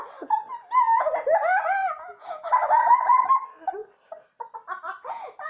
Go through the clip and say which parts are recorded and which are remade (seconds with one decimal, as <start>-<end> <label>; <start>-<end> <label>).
0.0-2.8 recorded; 2.8-3.3 remade; 3.3-5.5 recorded